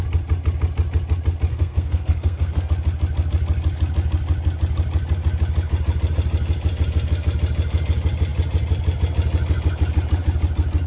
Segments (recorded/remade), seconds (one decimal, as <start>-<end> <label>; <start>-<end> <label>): 0.0-1.5 recorded; 1.5-2.7 remade; 2.7-10.9 recorded

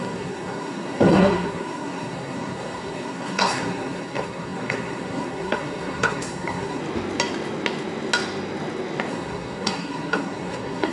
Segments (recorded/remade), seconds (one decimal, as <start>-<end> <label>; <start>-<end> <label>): 0.0-6.8 remade; 6.8-9.1 recorded; 9.1-10.9 remade

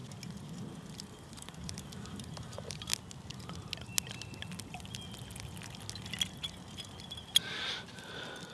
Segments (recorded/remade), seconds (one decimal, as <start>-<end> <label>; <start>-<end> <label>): 0.0-0.9 recorded; 0.9-2.9 remade; 2.9-7.2 recorded; 7.2-8.5 remade

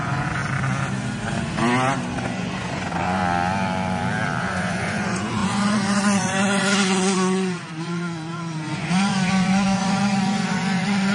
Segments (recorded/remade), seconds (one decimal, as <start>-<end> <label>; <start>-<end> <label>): 0.0-0.4 remade; 0.4-2.2 recorded; 2.2-3.2 remade; 3.2-4.4 recorded; 4.4-11.1 remade

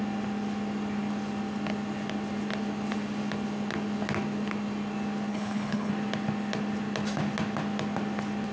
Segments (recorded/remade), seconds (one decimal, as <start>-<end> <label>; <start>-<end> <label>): 0.0-5.3 recorded; 5.3-5.9 remade; 5.9-8.5 recorded

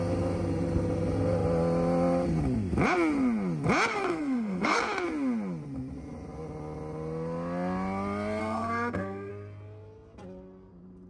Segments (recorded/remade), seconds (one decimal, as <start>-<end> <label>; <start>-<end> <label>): 0.0-3.9 recorded; 3.9-4.8 remade; 4.8-8.4 recorded; 8.4-9.3 remade; 9.3-11.1 recorded

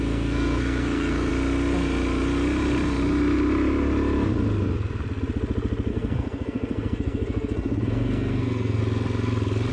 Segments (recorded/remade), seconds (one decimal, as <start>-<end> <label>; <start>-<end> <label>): 0.0-1.3 remade; 1.3-5.9 recorded; 5.9-8.8 remade; 8.8-9.7 recorded

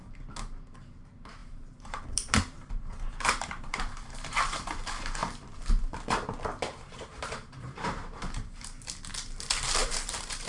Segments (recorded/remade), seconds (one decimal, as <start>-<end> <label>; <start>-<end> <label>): 0.0-1.4 recorded; 1.4-4.7 remade; 4.7-5.2 recorded; 5.2-8.6 remade; 8.6-9.8 recorded; 9.8-10.5 remade